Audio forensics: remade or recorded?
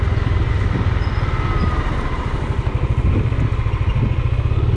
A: recorded